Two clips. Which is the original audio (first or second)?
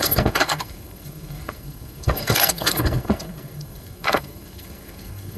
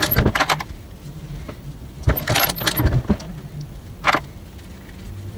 second